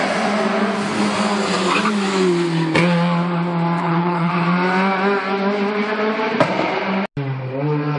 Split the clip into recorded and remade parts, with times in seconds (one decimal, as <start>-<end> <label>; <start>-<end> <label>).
0.0-3.8 recorded; 3.8-4.3 remade; 4.3-8.0 recorded